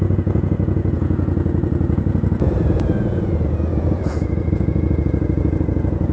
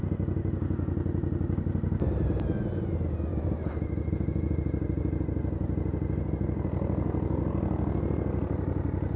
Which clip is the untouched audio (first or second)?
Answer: second